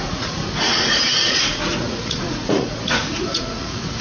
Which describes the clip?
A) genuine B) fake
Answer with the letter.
B